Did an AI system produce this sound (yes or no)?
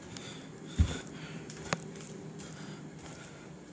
no